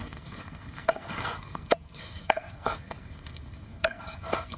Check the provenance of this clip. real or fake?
fake